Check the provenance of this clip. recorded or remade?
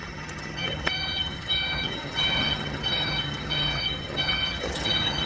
remade